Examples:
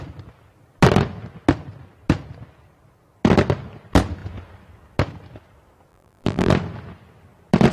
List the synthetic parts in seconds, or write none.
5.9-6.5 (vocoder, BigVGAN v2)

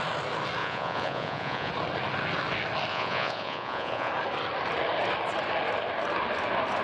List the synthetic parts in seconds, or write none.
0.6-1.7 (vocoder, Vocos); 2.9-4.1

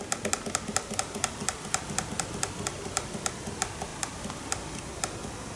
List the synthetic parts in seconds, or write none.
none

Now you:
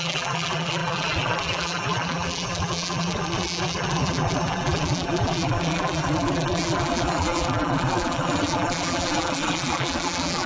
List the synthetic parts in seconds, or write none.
0.0-10.5 (vocoder, BigVGAN v2)

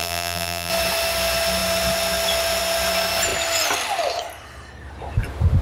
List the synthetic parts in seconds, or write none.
0.0-0.7 (vocoder, BigVGAN v2)

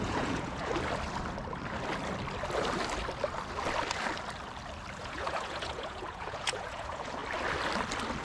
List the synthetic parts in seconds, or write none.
0.0-0.7 (vocoder, Vocos); 5.0-7.2

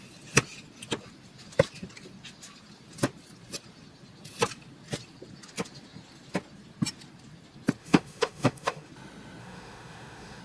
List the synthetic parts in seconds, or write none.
7.8-8.9 (autoencoder, DAC-VAE); 9.4-10.4

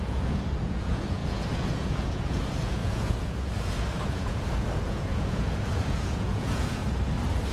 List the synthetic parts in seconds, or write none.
0.0-6.8 (vocoder, Vocos)